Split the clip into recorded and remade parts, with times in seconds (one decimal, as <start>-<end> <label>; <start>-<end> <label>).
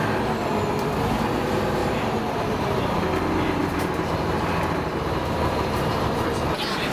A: 0.0-1.8 recorded; 1.8-3.1 remade; 3.1-3.6 recorded; 3.6-6.1 remade; 6.1-6.9 recorded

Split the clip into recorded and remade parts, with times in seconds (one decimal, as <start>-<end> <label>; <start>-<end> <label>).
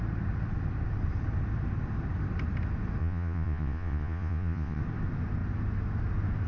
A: 0.0-3.0 recorded; 3.0-4.8 remade; 4.8-6.5 recorded